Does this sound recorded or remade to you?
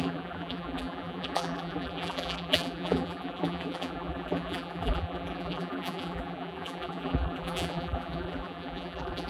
remade